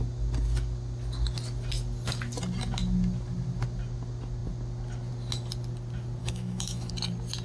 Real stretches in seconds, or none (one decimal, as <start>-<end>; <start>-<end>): 0.0-6.2; 6.9-7.4